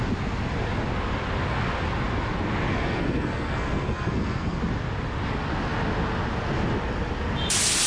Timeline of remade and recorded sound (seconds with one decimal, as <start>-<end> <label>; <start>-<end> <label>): 0.0-2.7 recorded; 2.7-4.6 remade; 4.6-7.9 recorded